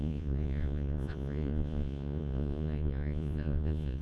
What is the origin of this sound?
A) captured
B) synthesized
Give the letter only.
B